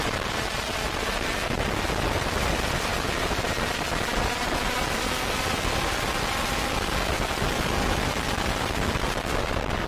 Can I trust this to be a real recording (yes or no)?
yes